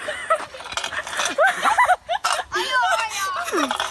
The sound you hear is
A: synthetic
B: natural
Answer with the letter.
B